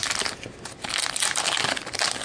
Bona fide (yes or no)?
yes